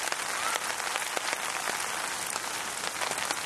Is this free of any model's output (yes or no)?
yes